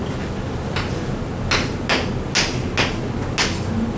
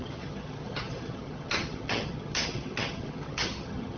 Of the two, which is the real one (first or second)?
first